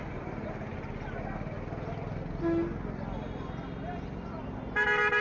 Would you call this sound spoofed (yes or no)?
no